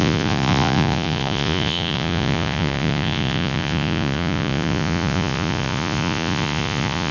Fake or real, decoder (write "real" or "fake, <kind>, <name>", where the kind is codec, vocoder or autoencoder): fake, vocoder, Vocos